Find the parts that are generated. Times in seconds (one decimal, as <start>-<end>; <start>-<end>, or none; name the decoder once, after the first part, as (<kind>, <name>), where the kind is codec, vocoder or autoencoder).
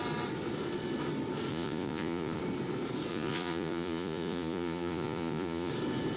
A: 1.5-2.4 (vocoder, Vocos); 3.1-5.7